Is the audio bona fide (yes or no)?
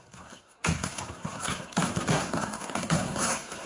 no